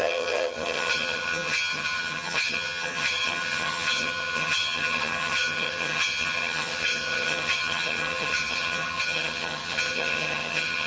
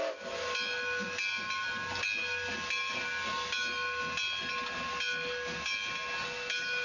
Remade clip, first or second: first